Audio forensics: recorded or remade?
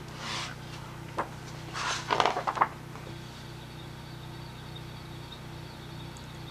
recorded